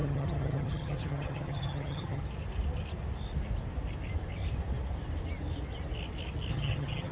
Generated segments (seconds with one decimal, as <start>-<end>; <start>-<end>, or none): 0.0-2.2; 6.5-7.1